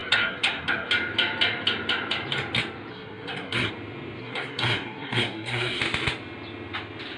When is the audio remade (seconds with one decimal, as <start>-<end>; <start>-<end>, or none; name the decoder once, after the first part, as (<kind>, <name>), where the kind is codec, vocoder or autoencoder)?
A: 0.0-0.9 (codec, SNAC); 2.9-3.7; 4.2-5.8